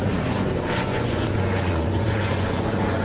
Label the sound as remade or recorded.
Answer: remade